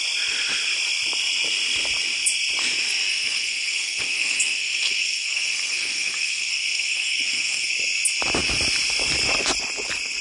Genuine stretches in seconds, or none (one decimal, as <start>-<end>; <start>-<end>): 0.0-3.1; 7.7-10.2